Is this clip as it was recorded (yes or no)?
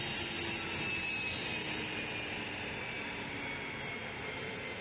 yes